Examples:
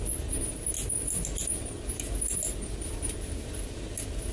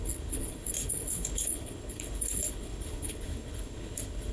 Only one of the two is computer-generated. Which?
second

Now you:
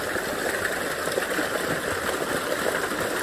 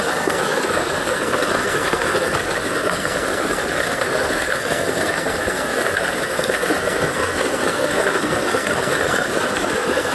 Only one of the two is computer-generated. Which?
second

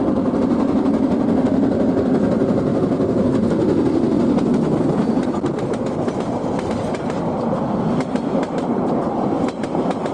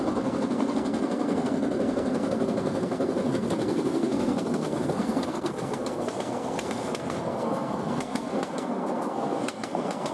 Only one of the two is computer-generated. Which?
second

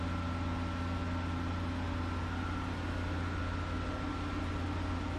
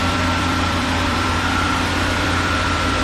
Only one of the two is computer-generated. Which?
second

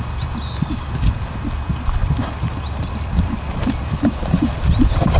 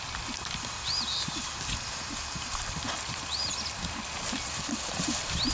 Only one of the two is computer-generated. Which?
second